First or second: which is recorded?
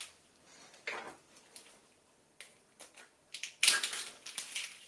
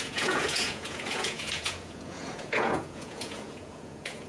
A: first